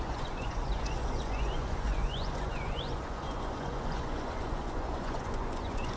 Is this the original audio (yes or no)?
no